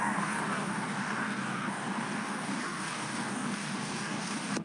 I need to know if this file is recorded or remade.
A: remade